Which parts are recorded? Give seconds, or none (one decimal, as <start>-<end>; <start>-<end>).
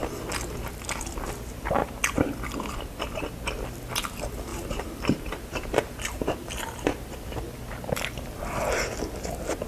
0.0-4.5; 7.4-9.7